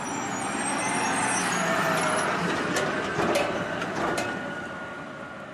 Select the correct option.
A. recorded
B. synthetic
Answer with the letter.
A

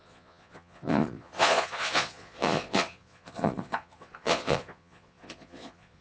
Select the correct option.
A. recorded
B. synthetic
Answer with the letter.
B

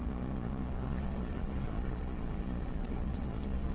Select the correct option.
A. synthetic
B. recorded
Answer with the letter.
A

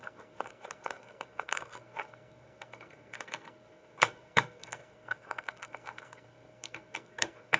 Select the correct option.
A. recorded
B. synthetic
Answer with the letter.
B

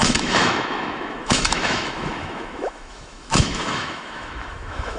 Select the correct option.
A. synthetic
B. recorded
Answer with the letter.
A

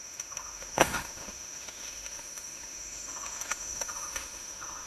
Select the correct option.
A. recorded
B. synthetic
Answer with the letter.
B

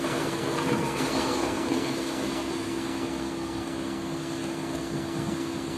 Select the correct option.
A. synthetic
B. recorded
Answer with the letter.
A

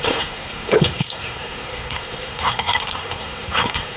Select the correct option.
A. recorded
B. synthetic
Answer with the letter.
B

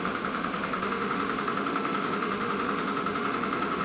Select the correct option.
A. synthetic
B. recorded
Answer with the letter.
A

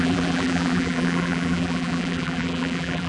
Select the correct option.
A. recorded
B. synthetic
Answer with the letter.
B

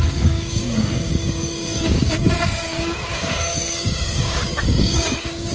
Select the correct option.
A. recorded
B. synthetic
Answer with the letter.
B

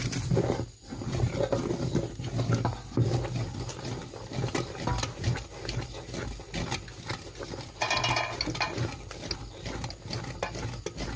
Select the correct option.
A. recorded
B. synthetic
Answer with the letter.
A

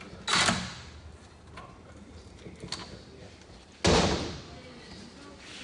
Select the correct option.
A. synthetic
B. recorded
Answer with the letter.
B